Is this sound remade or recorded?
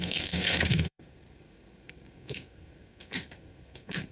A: remade